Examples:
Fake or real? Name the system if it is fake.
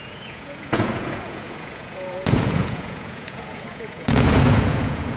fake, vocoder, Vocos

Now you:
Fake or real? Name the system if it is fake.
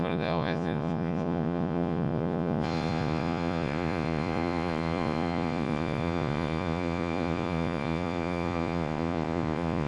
fake, vocoder, Vocos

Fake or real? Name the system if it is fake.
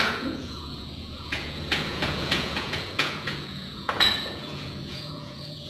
fake, vocoder, Vocos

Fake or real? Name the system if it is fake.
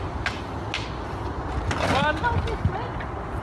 real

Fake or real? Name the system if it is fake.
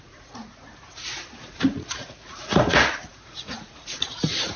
fake, vocoder, Vocos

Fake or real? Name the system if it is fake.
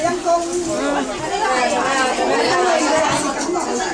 real